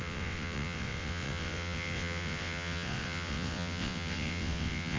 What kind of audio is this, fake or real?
fake